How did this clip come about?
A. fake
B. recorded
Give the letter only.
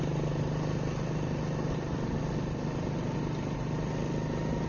B